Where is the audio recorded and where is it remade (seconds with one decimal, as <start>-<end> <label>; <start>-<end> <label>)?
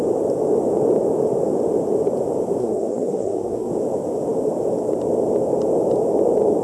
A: 0.0-2.6 recorded; 2.6-3.7 remade; 3.7-6.6 recorded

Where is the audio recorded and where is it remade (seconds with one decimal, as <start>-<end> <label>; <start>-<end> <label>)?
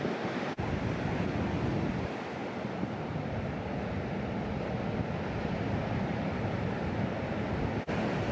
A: 0.0-2.4 recorded; 2.4-4.5 remade; 4.5-5.8 recorded; 5.8-6.9 remade; 6.9-8.3 recorded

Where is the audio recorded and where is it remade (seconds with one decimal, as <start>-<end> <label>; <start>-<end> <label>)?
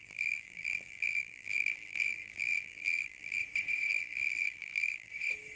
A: 0.0-3.4 remade; 3.4-3.9 recorded; 3.9-5.1 remade; 5.1-5.6 recorded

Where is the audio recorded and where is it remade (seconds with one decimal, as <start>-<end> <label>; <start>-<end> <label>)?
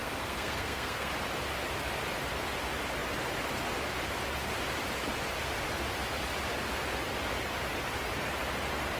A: 0.0-1.1 remade; 1.1-9.0 recorded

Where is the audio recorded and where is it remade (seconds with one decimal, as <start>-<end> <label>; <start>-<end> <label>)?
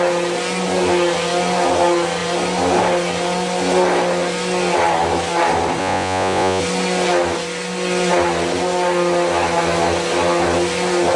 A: 0.0-5.8 recorded; 5.8-6.6 remade; 6.6-11.2 recorded